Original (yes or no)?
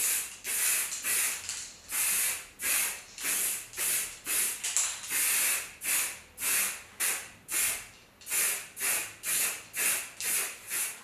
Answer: yes